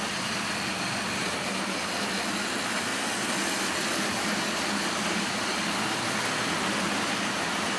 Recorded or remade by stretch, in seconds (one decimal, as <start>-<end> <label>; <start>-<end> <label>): 0.0-7.8 recorded